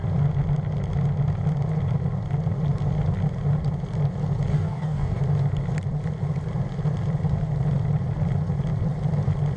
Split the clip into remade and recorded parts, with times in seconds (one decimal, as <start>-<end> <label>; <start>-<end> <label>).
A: 0.0-4.5 recorded; 4.5-5.2 remade; 5.2-9.6 recorded